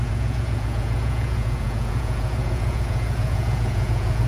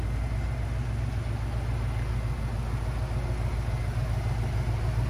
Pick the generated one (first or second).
first